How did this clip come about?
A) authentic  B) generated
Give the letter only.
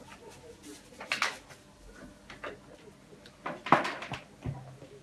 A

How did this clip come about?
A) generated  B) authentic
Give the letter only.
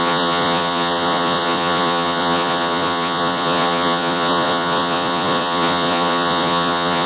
A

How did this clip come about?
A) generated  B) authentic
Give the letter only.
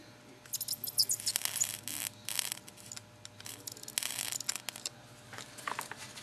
B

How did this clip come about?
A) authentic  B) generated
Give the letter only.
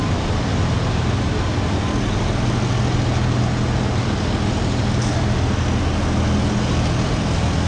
A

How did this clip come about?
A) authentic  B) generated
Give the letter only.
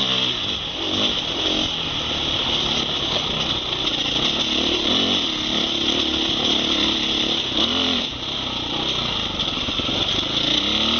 A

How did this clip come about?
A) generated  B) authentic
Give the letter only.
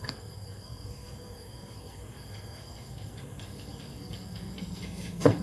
A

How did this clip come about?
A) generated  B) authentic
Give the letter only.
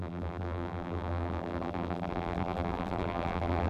A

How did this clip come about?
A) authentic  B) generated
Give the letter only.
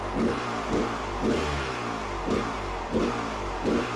A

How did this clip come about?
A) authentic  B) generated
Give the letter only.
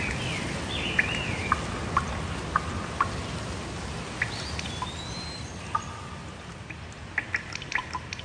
A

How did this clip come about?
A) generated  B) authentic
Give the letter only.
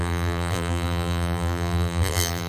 A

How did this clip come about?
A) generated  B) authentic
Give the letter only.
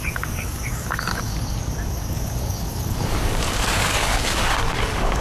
A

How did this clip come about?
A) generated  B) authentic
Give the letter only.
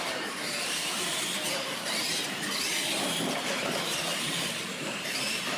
A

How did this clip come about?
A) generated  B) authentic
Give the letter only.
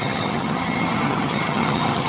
A